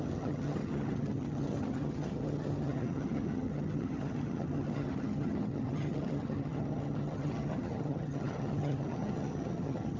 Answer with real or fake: fake